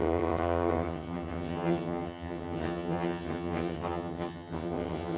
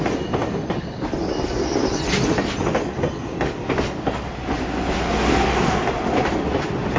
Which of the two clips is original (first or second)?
second